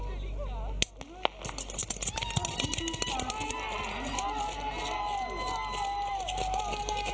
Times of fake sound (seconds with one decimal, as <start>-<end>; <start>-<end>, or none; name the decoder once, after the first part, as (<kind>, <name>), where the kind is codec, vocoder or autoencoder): none